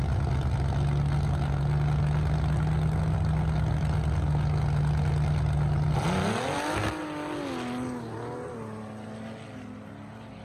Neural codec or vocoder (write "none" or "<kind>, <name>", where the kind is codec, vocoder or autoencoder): none